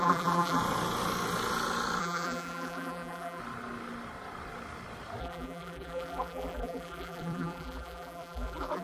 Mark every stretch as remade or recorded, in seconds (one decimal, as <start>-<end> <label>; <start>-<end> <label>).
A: 0.0-0.6 remade; 0.6-2.0 recorded; 2.0-3.4 remade; 3.4-5.2 recorded; 5.2-8.8 remade